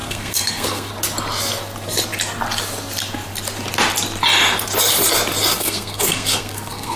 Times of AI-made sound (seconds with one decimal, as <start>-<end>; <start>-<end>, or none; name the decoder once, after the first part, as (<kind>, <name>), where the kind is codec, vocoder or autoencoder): 0.0-0.9 (codec, SNAC); 5.5-7.0